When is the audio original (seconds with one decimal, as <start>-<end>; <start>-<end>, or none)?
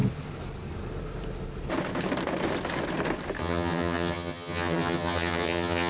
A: 0.0-3.4